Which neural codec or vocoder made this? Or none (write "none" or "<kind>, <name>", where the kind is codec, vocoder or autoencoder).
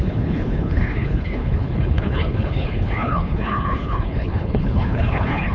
codec, HILCodec